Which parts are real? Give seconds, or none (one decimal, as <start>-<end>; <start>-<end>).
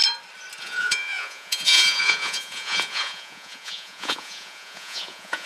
0.0-0.6